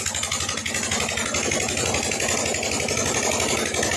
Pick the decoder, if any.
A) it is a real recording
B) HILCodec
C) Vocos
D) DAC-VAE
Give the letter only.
A